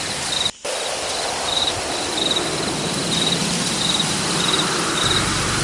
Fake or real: real